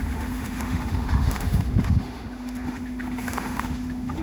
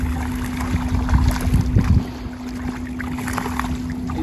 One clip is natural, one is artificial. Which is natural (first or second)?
second